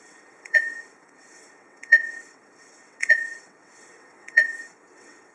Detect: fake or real fake